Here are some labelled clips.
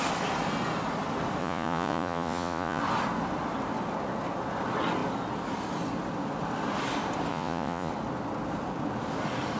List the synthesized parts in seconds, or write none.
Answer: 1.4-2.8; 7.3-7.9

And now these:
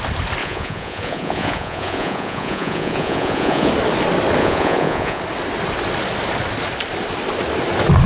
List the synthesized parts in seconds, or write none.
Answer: 0.4-3.7; 4.4-5.2

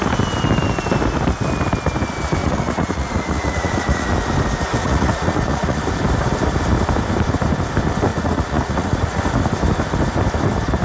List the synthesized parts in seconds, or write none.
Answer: 2.4-4.1; 4.8-5.8; 8.1-9.2

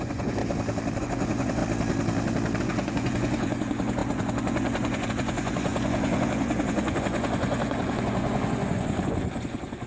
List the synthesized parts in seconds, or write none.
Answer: 0.0-0.4; 1.0-1.6; 2.6-9.9